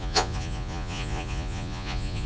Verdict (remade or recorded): remade